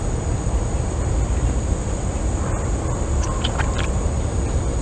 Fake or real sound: real